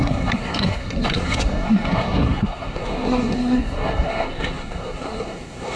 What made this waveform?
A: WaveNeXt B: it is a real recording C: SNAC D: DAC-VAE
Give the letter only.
C